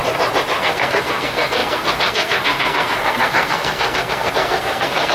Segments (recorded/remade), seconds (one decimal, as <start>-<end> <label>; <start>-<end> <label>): 0.0-0.6 recorded; 0.6-5.1 remade